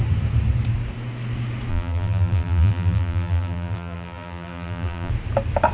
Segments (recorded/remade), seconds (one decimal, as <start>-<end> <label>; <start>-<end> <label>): 0.0-1.7 recorded; 1.7-5.1 remade; 5.1-5.7 recorded